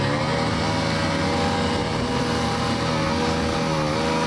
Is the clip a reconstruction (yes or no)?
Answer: no